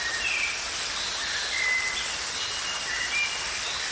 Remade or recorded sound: recorded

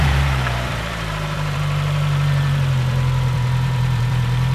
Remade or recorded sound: remade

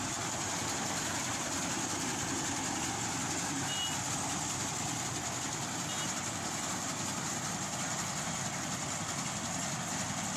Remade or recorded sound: remade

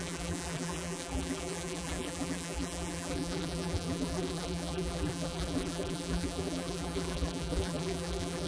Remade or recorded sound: remade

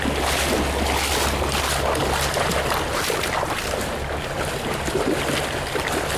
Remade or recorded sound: recorded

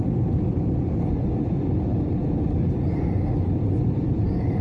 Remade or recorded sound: remade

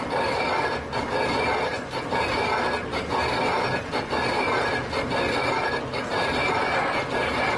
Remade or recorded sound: recorded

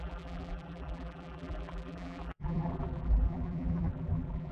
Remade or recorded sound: remade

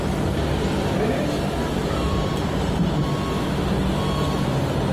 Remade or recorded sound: recorded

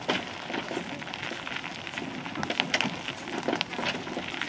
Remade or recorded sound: recorded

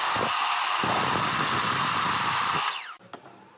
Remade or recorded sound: recorded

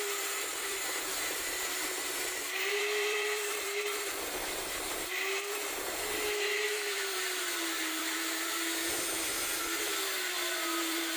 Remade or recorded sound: remade